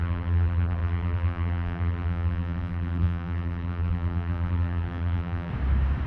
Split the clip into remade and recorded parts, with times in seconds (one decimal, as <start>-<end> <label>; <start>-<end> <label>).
0.0-5.5 remade; 5.5-6.1 recorded

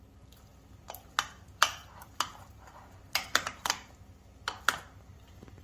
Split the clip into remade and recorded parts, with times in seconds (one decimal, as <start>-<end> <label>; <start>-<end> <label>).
0.0-0.5 recorded; 0.5-3.9 remade; 3.9-5.6 recorded

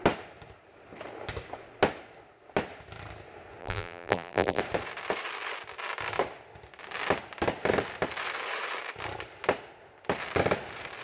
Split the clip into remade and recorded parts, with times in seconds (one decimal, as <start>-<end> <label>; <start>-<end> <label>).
0.0-3.6 recorded; 3.6-4.6 remade; 4.6-11.0 recorded

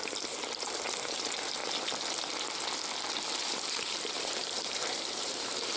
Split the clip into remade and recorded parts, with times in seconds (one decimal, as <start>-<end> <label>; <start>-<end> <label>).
0.0-1.6 remade; 1.6-3.4 recorded; 3.4-5.8 remade

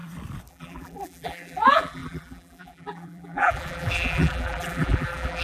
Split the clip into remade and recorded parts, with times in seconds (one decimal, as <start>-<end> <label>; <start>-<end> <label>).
0.0-0.5 recorded; 0.5-5.4 remade